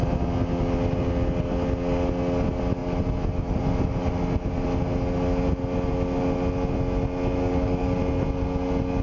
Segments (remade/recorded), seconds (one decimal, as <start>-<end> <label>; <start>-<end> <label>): 0.0-7.4 recorded; 7.4-8.0 remade; 8.0-9.0 recorded